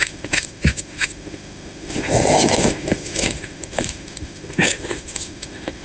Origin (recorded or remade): remade